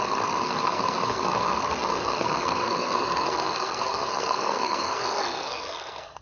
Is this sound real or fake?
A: fake